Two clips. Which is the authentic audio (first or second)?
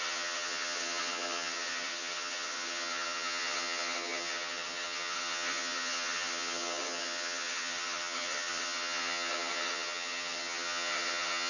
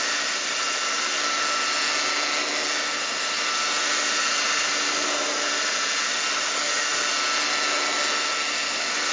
second